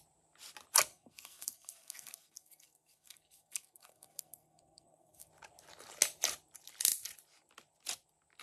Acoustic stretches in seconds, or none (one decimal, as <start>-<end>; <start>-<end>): 0.0-0.9; 5.3-8.4